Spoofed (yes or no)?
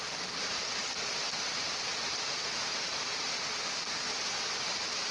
yes